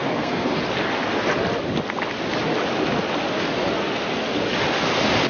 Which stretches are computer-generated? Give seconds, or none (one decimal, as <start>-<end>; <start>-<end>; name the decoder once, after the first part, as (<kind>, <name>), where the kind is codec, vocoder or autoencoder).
0.0-0.6 (codec, SNAC)